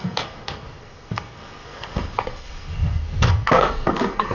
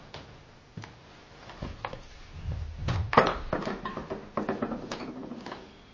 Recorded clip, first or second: second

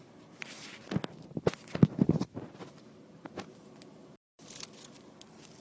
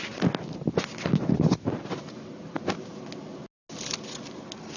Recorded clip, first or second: second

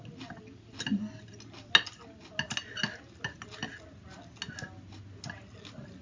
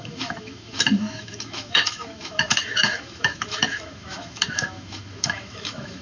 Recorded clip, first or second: first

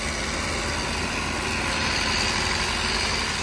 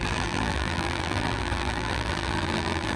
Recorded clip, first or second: first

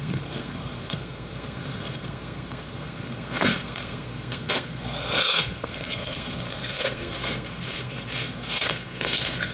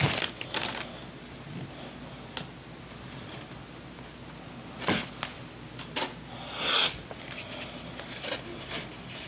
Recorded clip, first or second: second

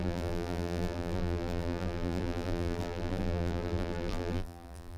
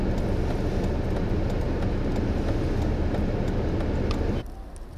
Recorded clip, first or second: second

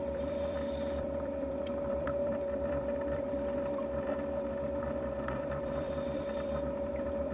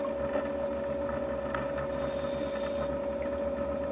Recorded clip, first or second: second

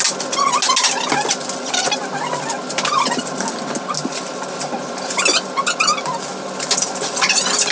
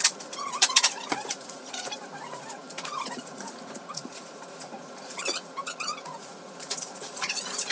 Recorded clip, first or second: first